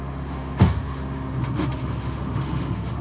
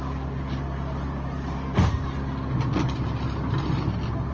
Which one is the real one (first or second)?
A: second